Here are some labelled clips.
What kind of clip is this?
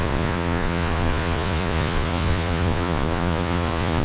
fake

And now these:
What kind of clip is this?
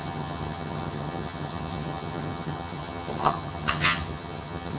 fake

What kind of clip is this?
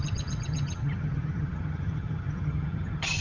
fake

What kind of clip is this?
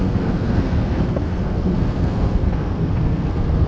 fake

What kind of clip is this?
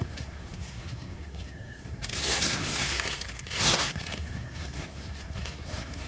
fake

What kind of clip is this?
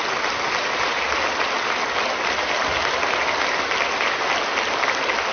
real